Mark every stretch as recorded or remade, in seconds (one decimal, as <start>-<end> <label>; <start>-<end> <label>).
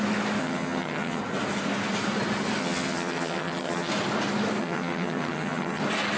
0.0-0.4 recorded; 0.4-1.2 remade; 1.2-2.6 recorded; 2.6-3.9 remade; 3.9-4.6 recorded; 4.6-5.8 remade; 5.8-6.2 recorded